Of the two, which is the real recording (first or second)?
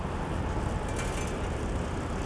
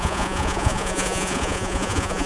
first